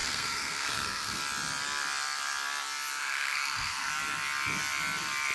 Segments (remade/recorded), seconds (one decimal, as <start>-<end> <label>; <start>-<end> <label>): 0.0-1.2 remade; 1.2-3.0 recorded; 3.0-3.9 remade; 3.9-5.3 recorded